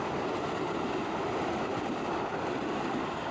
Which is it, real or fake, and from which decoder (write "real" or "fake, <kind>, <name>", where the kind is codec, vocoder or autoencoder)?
real